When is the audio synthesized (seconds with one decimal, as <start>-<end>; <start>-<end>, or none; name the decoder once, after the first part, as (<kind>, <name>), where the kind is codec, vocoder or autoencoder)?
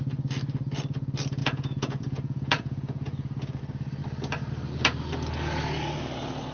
1.4-3.6 (vocoder, Vocos)